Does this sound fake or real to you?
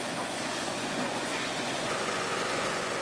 fake